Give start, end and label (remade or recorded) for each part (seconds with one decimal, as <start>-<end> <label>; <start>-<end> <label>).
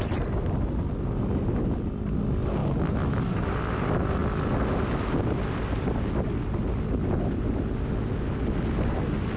0.0-9.4 recorded